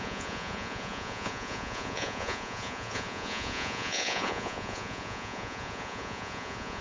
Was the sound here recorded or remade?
remade